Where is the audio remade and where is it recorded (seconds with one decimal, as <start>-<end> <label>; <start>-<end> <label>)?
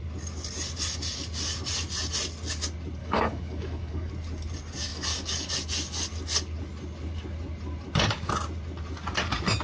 0.0-3.0 recorded; 3.0-4.1 remade; 4.1-4.9 recorded; 4.9-5.5 remade; 5.5-9.6 recorded